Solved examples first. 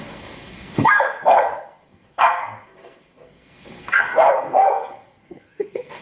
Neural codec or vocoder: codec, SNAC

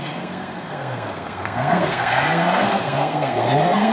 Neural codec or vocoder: codec, SNAC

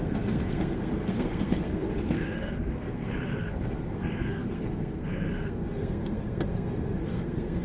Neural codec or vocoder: codec, SNAC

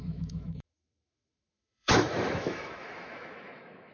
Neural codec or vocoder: autoencoder, DAC-VAE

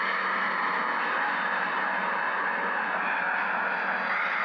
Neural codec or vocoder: none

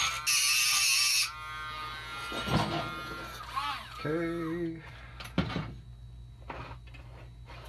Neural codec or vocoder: none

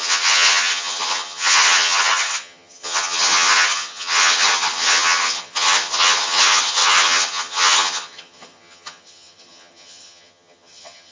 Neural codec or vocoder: vocoder, HiFi-GAN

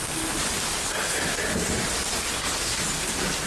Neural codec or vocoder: none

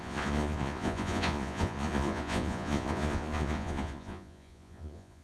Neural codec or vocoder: vocoder, Vocos